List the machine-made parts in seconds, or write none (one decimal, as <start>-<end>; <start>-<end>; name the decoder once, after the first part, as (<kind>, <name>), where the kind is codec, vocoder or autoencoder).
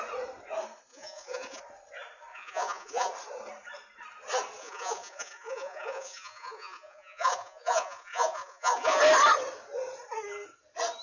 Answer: 0.9-1.6 (vocoder, Vocos); 2.3-3.1; 4.6-9.0